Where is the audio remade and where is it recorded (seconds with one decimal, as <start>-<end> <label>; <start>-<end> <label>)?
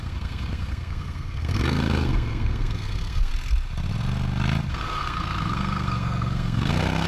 0.0-3.3 remade; 3.3-4.7 recorded; 4.7-7.1 remade